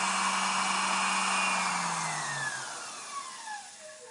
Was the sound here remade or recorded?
recorded